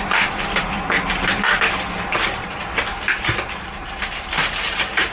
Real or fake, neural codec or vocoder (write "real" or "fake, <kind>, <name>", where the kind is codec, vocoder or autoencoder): real